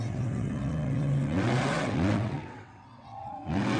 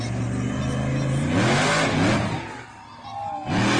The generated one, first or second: first